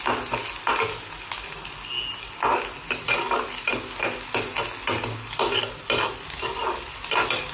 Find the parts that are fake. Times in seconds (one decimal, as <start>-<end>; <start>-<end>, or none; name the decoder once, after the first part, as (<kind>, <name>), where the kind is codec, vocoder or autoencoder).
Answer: none